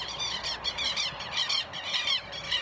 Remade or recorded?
recorded